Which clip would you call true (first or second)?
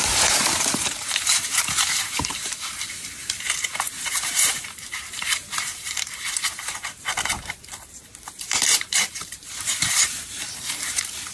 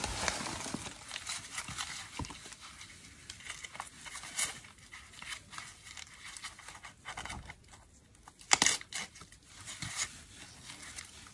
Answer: second